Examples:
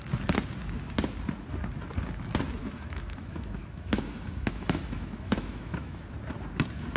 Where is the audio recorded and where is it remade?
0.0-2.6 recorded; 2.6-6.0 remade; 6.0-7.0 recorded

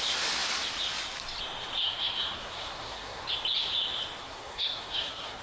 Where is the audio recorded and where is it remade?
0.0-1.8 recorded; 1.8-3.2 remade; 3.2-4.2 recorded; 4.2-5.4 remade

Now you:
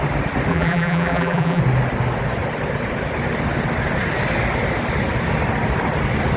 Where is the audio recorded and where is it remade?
0.0-0.5 recorded; 0.5-1.6 remade; 1.6-6.4 recorded